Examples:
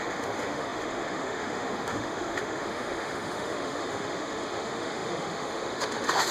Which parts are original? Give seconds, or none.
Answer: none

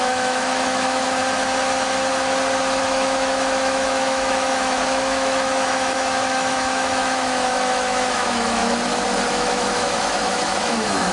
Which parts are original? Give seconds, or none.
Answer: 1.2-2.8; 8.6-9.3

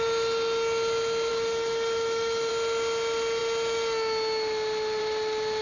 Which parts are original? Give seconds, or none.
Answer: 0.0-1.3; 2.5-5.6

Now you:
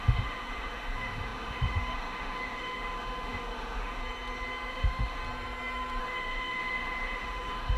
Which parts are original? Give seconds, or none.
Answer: 4.0-4.7; 5.2-6.0